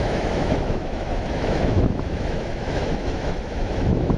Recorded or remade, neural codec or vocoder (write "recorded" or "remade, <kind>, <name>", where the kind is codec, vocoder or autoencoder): remade, autoencoder, DAC-VAE